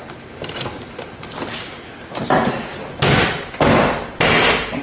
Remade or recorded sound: recorded